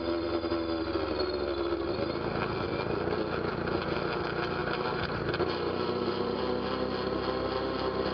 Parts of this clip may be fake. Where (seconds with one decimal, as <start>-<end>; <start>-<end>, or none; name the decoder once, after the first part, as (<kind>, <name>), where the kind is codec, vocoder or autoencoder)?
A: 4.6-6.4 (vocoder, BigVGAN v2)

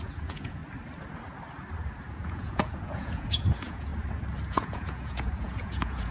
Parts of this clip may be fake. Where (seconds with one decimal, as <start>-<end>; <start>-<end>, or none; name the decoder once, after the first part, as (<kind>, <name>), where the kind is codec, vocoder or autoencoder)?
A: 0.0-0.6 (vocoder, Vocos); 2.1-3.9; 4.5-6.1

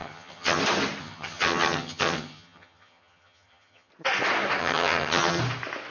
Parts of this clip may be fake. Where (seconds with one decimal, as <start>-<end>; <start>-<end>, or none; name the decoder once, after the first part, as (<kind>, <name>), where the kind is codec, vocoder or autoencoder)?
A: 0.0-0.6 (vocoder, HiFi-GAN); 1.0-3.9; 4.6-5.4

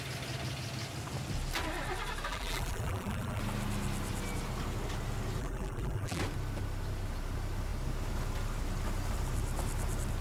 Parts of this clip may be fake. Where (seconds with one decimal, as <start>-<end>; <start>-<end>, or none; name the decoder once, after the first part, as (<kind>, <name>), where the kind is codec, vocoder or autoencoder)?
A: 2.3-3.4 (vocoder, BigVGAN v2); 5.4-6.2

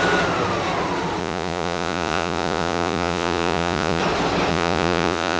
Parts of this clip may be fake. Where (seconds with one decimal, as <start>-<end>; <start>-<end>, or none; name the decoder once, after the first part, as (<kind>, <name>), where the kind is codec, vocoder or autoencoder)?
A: 1.2-4.0 (vocoder, Vocos); 4.5-5.4